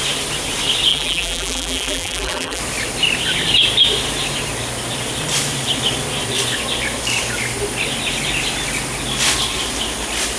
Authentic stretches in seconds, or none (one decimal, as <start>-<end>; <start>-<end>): 0.0-0.9; 2.6-10.4